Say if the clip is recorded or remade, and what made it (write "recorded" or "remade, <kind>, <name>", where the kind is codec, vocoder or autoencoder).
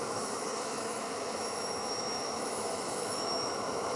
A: remade, autoencoder, DAC-VAE